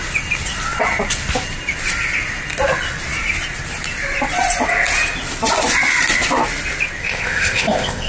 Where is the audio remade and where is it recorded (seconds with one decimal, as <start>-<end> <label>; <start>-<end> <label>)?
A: 0.0-7.0 recorded; 7.0-8.1 remade